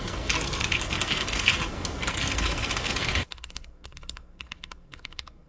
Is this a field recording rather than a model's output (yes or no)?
no